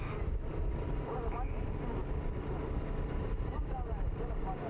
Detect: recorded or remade recorded